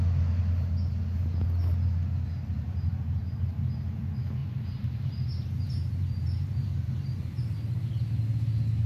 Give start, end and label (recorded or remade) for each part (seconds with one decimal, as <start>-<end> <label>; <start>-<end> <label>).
0.0-2.5 recorded; 2.5-3.4 remade; 3.4-4.4 recorded; 4.4-7.8 remade; 7.8-8.9 recorded